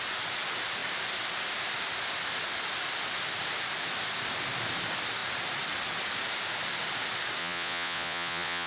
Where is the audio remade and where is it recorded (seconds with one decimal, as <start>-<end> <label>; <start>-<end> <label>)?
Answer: 0.0-7.4 recorded; 7.4-8.7 remade